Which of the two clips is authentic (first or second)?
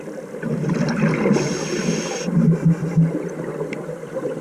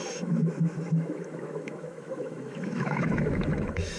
first